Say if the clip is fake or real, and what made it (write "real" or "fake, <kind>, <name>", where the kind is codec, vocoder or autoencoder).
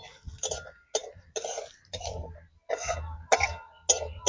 real